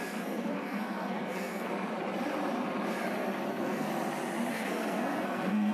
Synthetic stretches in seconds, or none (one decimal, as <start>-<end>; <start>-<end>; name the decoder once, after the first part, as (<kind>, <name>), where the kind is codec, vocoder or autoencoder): 0.0-1.7 (codec, SNAC); 3.5-3.9; 4.5-5.7